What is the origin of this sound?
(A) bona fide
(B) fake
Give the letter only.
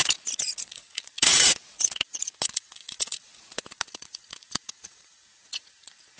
B